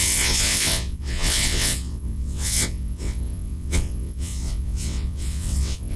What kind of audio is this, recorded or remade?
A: remade